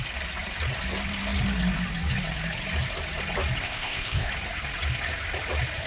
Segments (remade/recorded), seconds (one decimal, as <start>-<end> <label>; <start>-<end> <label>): 0.0-3.6 recorded; 3.6-4.3 remade; 4.3-5.9 recorded